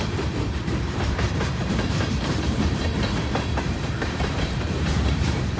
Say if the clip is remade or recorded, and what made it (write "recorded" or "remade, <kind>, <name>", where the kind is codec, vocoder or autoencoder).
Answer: remade, vocoder, BigVGAN v2